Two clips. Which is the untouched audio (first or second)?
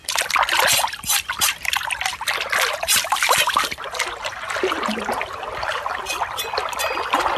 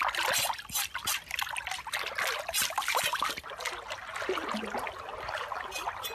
second